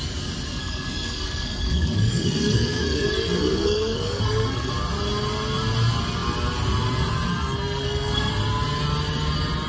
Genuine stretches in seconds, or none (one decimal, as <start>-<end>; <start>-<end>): 0.0-0.5; 4.7-7.3; 8.3-9.7